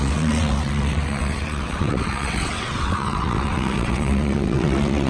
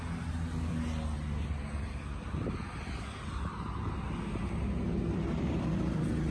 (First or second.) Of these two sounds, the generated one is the first